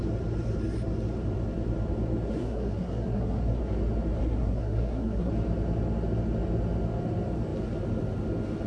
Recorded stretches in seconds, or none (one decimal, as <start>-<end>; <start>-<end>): 0.0-2.3; 3.6-4.2; 5.3-8.7